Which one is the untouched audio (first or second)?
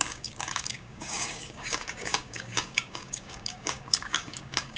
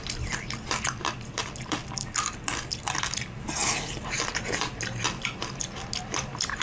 second